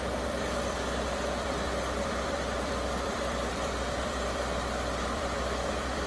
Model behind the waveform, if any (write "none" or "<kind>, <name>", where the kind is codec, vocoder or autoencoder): vocoder, BigVGAN v2